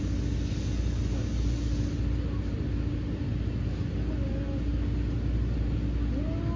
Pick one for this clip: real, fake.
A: real